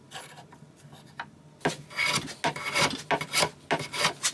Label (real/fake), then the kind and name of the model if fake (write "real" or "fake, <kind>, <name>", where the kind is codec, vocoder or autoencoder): real